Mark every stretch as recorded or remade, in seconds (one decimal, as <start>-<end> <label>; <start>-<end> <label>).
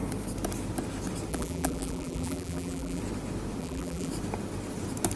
0.0-1.3 recorded; 1.3-3.0 remade; 3.0-3.6 recorded; 3.6-4.1 remade; 4.1-5.2 recorded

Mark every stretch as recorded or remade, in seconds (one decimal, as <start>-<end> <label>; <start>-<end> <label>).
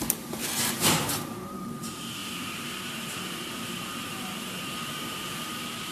0.0-5.9 remade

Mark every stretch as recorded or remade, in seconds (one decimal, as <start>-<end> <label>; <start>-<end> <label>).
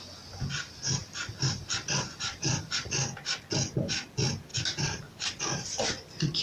0.0-4.5 recorded; 4.5-5.4 remade; 5.4-6.4 recorded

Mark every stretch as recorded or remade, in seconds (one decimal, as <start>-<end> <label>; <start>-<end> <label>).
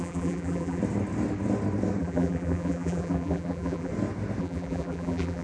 0.0-0.8 remade; 0.8-2.0 recorded; 2.0-3.9 remade; 3.9-4.4 recorded; 4.4-5.4 remade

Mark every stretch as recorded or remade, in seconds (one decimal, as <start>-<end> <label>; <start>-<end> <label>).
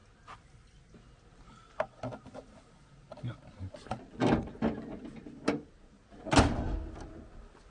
0.0-7.7 recorded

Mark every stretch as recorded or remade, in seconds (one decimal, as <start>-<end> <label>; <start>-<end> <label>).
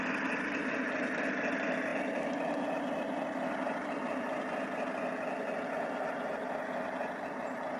0.0-7.8 recorded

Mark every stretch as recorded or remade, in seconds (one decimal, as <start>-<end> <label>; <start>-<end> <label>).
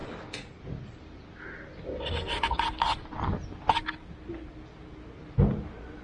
0.0-6.0 recorded